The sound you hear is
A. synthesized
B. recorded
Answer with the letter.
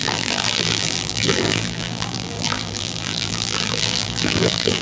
A